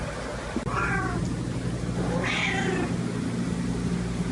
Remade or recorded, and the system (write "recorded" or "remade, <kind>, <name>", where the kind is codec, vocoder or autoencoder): recorded